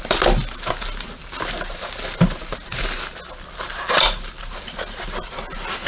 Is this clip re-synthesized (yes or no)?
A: no